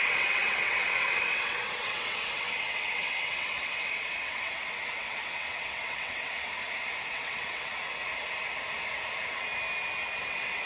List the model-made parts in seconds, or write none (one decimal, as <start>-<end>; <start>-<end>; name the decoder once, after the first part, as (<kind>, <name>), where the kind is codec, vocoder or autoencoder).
0.0-6.5 (vocoder, WaveNeXt); 7.1-7.7; 10.2-10.7